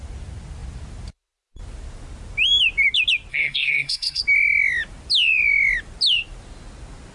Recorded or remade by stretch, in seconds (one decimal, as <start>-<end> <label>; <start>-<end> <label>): 0.0-3.3 recorded; 3.3-4.2 remade; 4.2-7.1 recorded